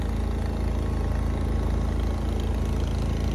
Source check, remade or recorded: recorded